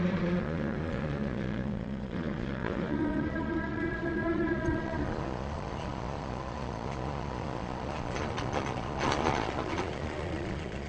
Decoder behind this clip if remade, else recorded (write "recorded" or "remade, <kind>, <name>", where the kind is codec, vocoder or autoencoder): remade, vocoder, Vocos